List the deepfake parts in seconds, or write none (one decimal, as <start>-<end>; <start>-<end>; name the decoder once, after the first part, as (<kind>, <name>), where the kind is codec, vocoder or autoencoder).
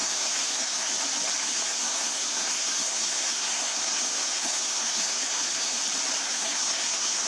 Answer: 0.0-0.9 (codec, SNAC); 1.4-5.8; 6.2-7.3